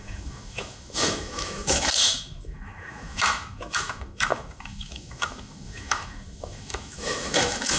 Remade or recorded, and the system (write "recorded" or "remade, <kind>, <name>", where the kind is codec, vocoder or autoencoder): remade, autoencoder, DAC-VAE